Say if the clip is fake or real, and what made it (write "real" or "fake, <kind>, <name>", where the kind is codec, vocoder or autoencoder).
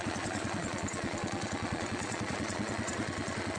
fake, vocoder, Vocos